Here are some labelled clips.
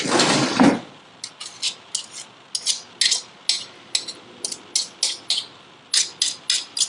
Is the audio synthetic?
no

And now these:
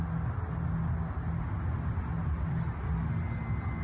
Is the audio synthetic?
no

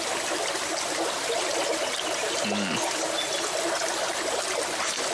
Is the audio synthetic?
no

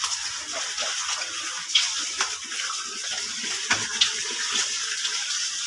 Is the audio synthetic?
no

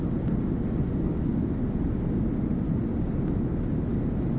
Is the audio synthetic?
no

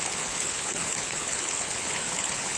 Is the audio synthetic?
yes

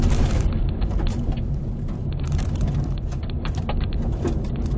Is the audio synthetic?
no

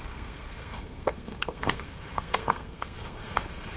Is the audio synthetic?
yes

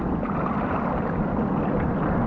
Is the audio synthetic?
no